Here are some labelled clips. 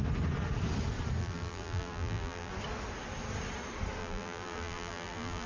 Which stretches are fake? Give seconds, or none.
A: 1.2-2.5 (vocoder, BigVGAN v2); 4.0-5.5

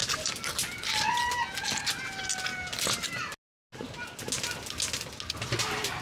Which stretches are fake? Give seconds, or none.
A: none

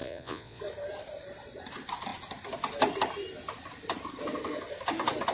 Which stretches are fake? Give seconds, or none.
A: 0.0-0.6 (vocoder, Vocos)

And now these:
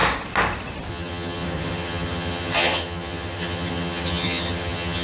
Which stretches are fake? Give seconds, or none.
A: 0.9-5.0 (vocoder, HiFi-GAN)

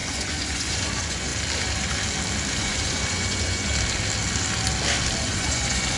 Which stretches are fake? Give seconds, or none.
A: 0.0-1.3 (vocoder, Vocos); 2.5-3.7; 5.2-6.0

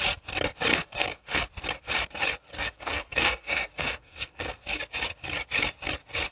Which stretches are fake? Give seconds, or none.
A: 0.7-1.4 (codec, SNAC); 2.5-4.6